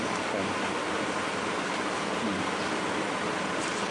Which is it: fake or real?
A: real